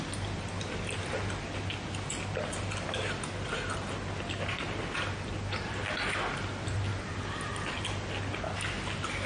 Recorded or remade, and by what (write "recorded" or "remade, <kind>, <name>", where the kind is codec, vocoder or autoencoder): recorded